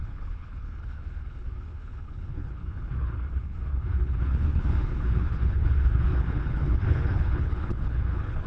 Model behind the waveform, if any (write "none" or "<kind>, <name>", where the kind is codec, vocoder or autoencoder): codec, HILCodec